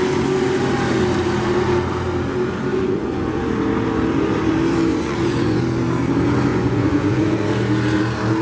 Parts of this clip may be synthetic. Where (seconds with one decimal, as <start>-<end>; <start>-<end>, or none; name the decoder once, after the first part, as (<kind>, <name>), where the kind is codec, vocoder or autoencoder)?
2.7-3.4 (vocoder, Vocos); 4.9-5.6; 6.5-7.5